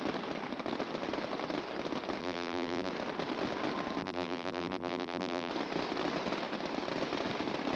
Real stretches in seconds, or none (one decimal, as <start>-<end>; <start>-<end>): 0.0-2.2; 2.9-4.0; 5.5-7.8